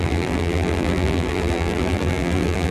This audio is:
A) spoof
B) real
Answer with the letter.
A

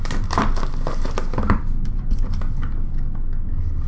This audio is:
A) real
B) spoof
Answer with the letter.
A